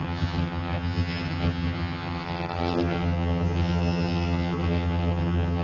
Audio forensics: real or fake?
fake